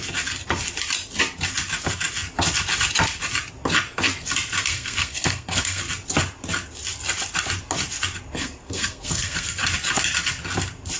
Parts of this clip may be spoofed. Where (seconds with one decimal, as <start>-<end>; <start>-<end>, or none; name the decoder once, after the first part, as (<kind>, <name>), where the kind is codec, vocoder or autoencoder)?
4.6-5.8 (codec, SNAC); 8.4-9.6